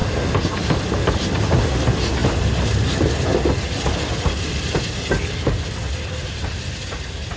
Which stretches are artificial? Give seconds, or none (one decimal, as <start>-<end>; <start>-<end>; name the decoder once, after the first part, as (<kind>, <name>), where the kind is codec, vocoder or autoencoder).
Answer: none